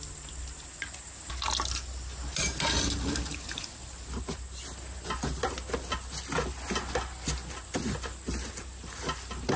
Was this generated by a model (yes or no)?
no